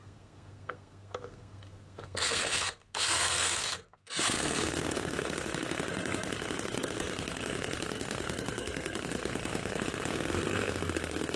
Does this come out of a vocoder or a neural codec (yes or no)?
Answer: yes